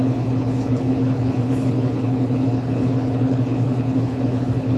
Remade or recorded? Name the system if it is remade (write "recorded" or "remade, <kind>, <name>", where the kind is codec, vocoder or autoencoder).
remade, codec, HILCodec